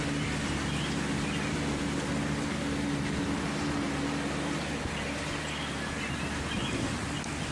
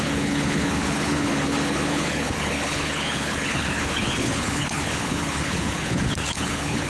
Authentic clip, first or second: first